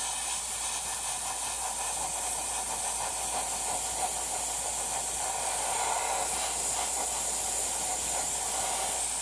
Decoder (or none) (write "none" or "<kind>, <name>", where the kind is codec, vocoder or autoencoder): none